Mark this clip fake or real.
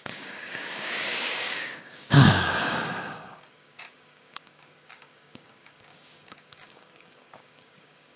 fake